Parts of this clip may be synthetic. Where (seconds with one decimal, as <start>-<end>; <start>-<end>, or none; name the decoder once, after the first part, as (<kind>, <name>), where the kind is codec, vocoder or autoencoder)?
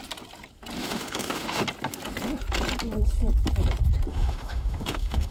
0.8-1.6 (autoencoder, DAC-VAE); 4.1-5.3